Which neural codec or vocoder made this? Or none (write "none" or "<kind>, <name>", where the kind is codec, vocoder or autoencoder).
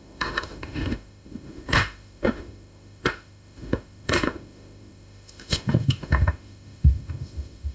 autoencoder, DAC-VAE